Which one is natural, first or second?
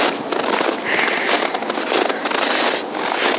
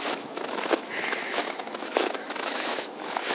first